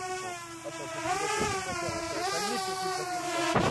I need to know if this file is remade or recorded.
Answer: recorded